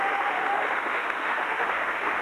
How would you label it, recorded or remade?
remade